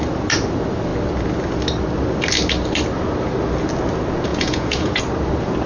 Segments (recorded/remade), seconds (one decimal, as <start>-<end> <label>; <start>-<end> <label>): 0.0-4.3 recorded; 4.3-5.0 remade; 5.0-5.7 recorded